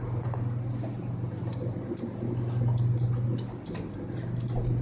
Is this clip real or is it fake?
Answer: real